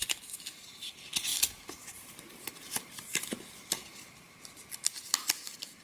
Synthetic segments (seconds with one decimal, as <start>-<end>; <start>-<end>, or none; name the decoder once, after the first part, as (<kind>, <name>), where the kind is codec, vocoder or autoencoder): none

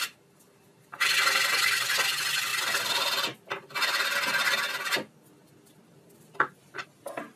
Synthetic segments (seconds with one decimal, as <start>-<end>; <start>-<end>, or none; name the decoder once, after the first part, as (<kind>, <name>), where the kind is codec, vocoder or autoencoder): none

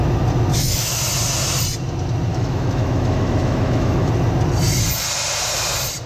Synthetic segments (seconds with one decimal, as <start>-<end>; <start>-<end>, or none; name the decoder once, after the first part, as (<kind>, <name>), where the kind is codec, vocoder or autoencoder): 0.5-1.0 (autoencoder, DAC-VAE); 2.3-4.1

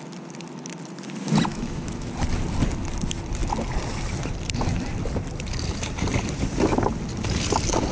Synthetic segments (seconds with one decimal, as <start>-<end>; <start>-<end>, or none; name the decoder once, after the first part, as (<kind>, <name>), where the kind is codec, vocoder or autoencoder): 1.5-2.1 (autoencoder, DAC-VAE)

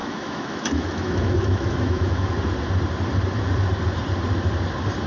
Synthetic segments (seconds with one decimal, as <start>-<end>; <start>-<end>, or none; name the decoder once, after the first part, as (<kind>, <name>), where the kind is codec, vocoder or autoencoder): 0.0-2.3 (autoencoder, DAC-VAE)